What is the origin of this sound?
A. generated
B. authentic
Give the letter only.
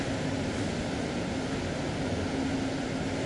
B